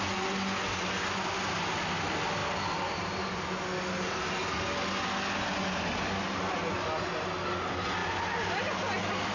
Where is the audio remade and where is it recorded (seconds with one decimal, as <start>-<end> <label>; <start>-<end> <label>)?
0.0-9.3 recorded